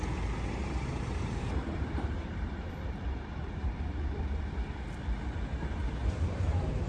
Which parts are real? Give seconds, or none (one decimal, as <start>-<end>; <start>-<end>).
0.0-0.6; 4.4-6.0